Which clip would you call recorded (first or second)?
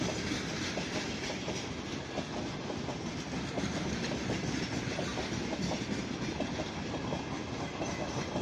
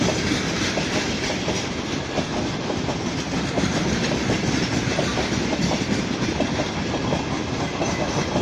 first